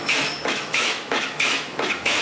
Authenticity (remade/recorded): remade